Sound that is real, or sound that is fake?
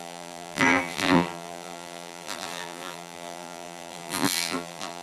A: fake